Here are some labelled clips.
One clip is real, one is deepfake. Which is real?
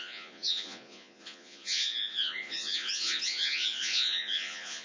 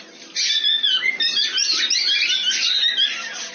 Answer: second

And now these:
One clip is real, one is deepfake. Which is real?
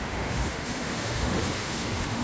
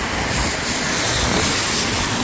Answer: second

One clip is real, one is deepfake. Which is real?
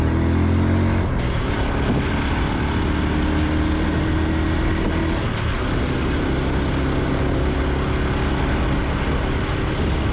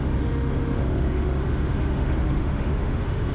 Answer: first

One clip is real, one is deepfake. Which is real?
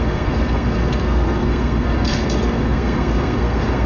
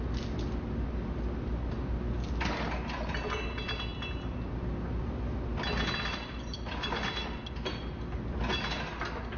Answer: second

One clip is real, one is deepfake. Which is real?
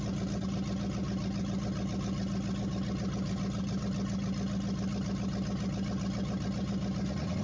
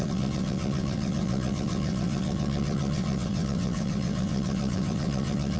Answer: first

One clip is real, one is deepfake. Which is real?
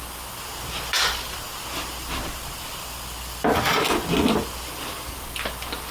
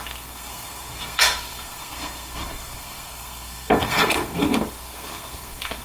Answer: first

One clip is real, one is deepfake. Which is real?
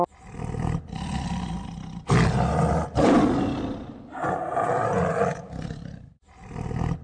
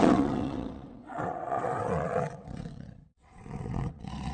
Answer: first